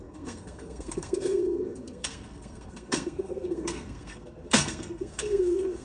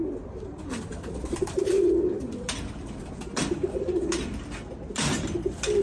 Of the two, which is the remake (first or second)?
first